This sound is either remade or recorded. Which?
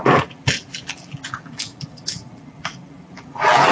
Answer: remade